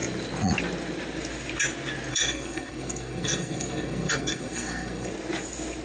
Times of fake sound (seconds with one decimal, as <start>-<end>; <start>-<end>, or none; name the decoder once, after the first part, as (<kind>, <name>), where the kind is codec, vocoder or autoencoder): 2.1-5.1 (codec, SNAC)